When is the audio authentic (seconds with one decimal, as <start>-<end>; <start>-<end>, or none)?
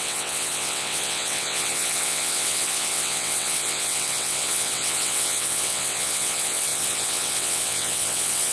none